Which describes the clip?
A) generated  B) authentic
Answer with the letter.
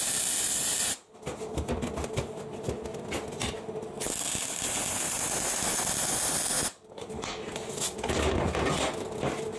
B